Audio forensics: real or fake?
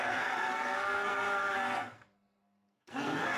fake